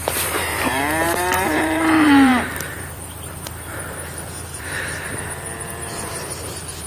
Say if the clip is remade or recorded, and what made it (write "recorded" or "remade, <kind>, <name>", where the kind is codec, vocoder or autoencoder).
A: remade, vocoder, BigVGAN v2